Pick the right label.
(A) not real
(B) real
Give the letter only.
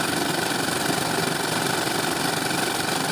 B